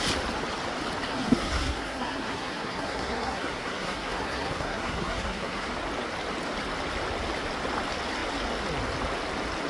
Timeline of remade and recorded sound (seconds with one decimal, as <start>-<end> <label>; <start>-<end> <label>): 0.0-1.1 recorded; 1.1-5.7 remade; 5.7-9.7 recorded